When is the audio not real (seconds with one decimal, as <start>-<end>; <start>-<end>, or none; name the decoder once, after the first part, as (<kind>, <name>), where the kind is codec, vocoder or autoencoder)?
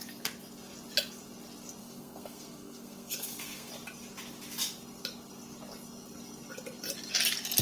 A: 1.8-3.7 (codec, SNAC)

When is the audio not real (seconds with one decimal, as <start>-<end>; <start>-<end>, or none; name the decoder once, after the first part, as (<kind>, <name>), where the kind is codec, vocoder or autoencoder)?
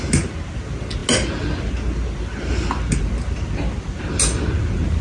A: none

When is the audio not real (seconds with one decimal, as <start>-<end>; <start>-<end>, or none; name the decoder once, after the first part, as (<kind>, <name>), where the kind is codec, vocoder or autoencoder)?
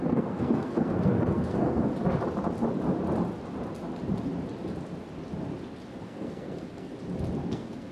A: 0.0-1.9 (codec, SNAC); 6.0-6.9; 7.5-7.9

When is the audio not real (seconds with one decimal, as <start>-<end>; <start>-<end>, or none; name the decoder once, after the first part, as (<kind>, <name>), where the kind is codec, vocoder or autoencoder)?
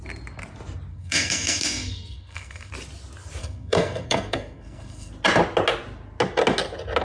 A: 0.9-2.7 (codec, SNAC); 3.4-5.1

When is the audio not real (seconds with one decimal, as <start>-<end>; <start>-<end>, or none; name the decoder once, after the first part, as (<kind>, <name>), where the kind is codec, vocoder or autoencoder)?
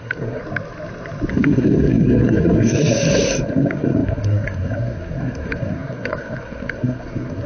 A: 0.0-0.4 (codec, SNAC); 1.3-7.5